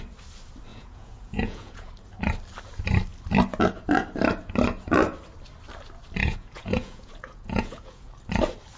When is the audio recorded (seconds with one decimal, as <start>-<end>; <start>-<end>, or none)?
0.0-0.7; 1.9-6.2; 8.1-8.8